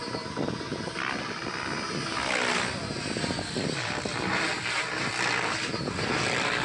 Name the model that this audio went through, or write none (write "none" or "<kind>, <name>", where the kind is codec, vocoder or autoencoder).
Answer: none